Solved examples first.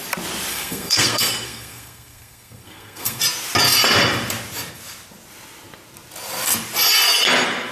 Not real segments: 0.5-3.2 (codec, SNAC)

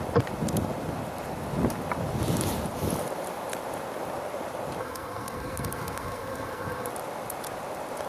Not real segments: 4.8-6.9 (codec, SNAC)

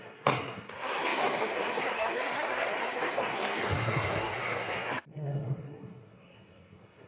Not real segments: 0.0-7.1 (codec, SNAC)

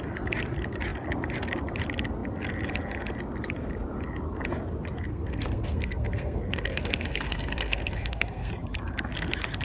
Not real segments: 5.1-8.5 (codec, SNAC)

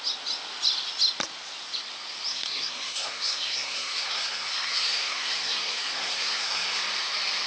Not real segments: 2.3-6.8 (codec, SNAC)

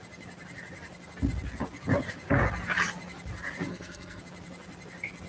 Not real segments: 3.7-4.2 (codec, SNAC)

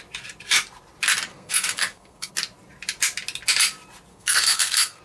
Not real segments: 1.3-2.3 (codec, SNAC); 4.1-5.0